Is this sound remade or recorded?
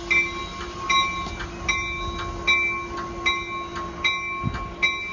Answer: recorded